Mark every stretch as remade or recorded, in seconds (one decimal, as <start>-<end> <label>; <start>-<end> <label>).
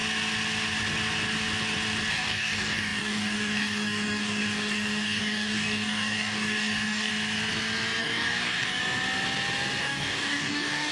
0.0-2.1 recorded; 2.1-7.1 remade; 7.1-8.0 recorded; 8.0-8.8 remade; 8.8-9.8 recorded; 9.8-10.9 remade